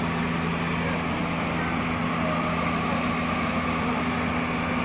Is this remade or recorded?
recorded